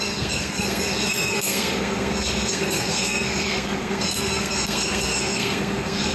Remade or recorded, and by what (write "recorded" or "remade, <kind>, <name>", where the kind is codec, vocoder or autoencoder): remade, codec, SNAC